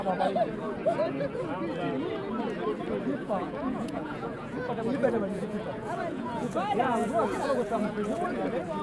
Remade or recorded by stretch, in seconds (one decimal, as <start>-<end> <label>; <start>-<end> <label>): 0.0-3.2 recorded; 3.2-8.4 remade; 8.4-8.8 recorded